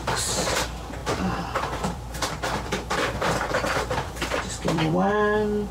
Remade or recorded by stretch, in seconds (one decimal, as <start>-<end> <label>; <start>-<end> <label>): 0.0-5.7 remade